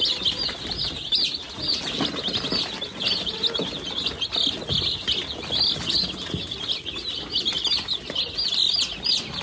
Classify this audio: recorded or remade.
recorded